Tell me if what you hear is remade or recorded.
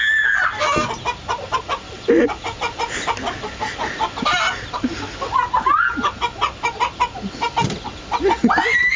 recorded